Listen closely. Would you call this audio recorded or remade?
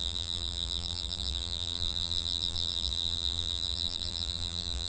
remade